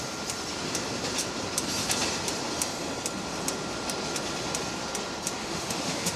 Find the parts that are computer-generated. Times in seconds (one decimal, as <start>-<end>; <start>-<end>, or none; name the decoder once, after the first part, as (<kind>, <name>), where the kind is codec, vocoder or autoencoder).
5.4-6.2 (autoencoder, DAC-VAE)